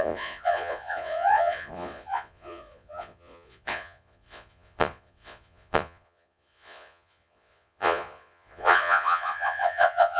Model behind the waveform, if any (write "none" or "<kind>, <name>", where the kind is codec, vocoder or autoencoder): vocoder, Vocos